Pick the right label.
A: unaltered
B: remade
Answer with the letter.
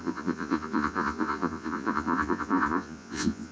B